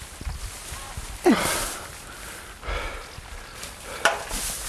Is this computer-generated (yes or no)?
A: no